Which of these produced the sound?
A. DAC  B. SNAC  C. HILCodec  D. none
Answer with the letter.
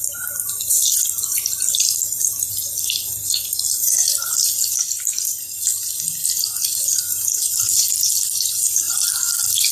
D